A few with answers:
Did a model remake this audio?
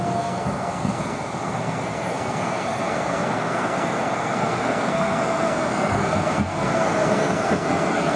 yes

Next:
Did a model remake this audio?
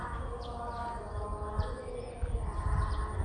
no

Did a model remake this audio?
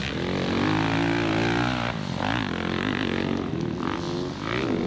no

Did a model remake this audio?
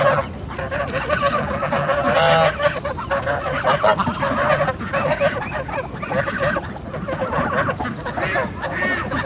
no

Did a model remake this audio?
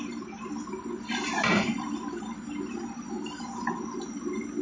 no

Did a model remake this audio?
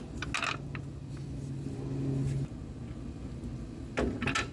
no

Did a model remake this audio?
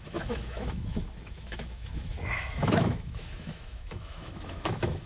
yes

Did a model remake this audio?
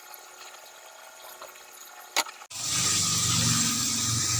no